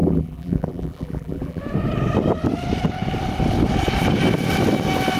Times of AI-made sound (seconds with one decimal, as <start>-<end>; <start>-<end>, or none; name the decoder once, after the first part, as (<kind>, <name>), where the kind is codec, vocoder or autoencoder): 0.0-1.6 (vocoder, BigVGAN v2)